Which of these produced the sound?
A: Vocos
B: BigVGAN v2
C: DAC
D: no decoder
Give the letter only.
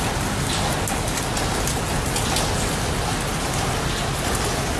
D